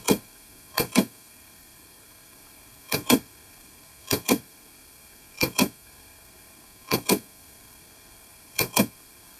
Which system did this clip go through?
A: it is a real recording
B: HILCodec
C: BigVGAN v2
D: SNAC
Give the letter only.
D